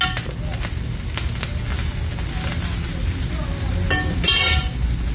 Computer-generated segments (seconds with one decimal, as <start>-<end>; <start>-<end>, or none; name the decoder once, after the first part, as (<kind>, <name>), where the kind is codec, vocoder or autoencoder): none